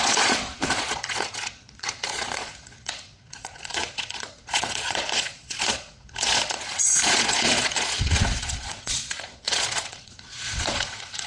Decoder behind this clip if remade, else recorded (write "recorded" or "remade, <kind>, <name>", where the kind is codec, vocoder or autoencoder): remade, vocoder, Vocos